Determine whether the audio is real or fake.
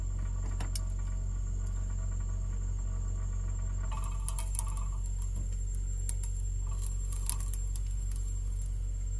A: real